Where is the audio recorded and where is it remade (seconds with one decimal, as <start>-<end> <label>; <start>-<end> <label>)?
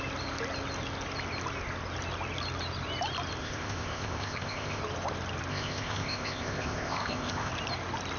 0.0-3.4 recorded; 3.4-4.8 remade; 4.8-5.5 recorded; 5.5-7.5 remade; 7.5-8.2 recorded